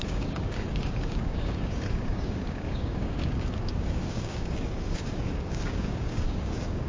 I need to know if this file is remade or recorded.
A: remade